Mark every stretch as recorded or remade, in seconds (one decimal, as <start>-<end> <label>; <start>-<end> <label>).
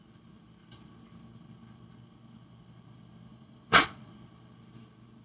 0.0-3.3 recorded; 3.3-4.1 remade; 4.1-5.2 recorded